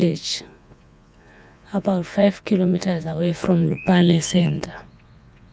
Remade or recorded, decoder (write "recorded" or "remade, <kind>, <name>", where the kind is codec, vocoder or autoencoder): remade, vocoder, Vocos